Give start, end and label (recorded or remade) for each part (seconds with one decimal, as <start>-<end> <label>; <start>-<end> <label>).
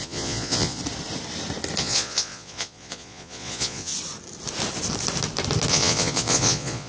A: 0.0-0.8 remade; 0.8-1.8 recorded; 1.8-3.9 remade; 3.9-5.7 recorded; 5.7-6.9 remade